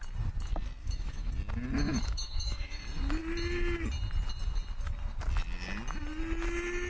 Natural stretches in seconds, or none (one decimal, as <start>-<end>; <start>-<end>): 0.0-0.8; 1.3-1.9; 2.8-6.9